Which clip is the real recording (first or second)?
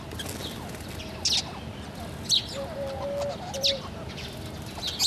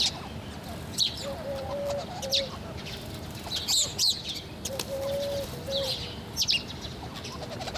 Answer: first